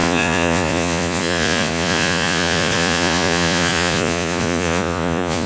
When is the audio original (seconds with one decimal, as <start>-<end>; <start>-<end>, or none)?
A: none